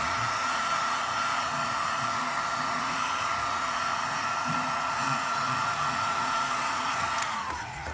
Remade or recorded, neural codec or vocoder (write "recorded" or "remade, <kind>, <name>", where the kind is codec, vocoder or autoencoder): remade, vocoder, Vocos